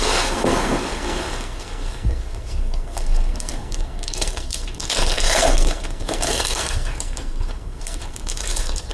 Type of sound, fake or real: fake